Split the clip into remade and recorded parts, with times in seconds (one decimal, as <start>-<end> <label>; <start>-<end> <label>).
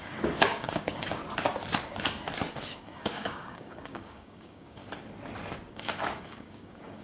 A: 0.0-1.2 remade; 1.2-2.5 recorded; 2.5-4.8 remade; 4.8-5.7 recorded; 5.7-7.0 remade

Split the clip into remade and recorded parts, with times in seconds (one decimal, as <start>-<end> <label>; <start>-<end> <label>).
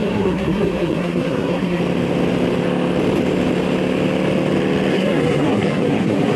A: 0.0-1.8 remade; 1.8-4.9 recorded; 4.9-6.4 remade